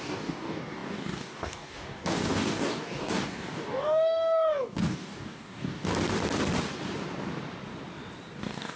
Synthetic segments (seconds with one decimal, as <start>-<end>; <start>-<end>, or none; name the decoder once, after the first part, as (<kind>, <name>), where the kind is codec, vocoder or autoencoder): 0.0-5.9 (codec, DAC); 8.4-8.8